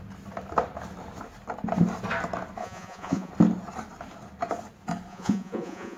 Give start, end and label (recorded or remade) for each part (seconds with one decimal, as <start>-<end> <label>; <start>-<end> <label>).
0.0-2.6 recorded; 2.6-3.3 remade; 3.3-5.1 recorded; 5.1-6.0 remade